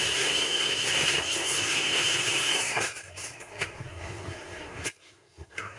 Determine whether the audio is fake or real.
fake